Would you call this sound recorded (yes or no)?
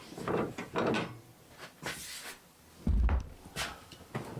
yes